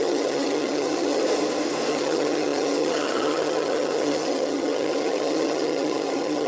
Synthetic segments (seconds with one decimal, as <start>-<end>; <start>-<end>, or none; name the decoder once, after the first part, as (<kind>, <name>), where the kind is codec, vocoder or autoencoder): 0.0-1.2 (vocoder, HiFi-GAN); 1.9-6.5